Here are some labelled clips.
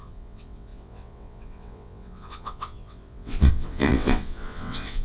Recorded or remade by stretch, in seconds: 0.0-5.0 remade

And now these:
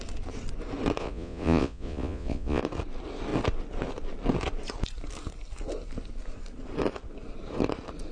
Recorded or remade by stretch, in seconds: 0.0-1.0 recorded; 1.0-2.6 remade; 2.6-8.1 recorded

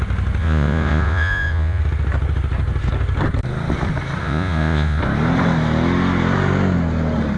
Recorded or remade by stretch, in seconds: 0.0-0.4 recorded; 0.4-1.8 remade; 1.8-4.2 recorded; 4.2-5.0 remade; 5.0-7.4 recorded

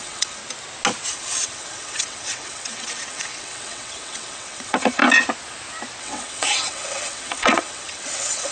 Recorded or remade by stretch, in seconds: 0.0-0.4 remade; 0.4-1.1 recorded; 1.1-5.0 remade; 5.0-6.0 recorded; 6.0-8.5 remade

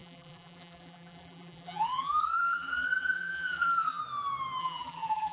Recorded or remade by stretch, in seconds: 0.0-4.0 remade; 4.0-4.6 recorded; 4.6-5.3 remade

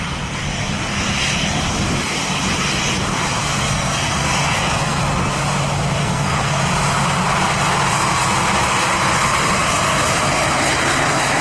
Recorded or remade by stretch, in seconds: 0.0-3.4 recorded; 3.4-5.0 remade; 5.0-6.0 recorded; 6.0-6.6 remade; 6.6-11.4 recorded